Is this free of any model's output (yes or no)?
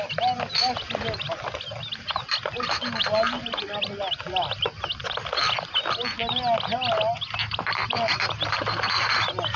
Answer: yes